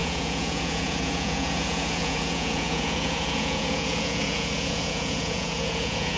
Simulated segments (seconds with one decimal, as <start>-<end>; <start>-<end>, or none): 0.0-6.2